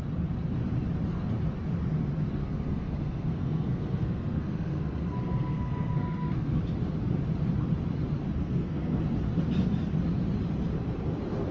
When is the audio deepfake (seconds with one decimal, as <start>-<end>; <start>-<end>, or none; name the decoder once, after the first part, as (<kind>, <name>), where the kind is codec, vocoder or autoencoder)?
2.4-6.6 (codec, SNAC); 8.4-9.0